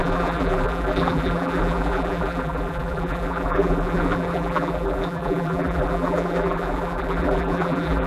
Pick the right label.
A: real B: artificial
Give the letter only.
B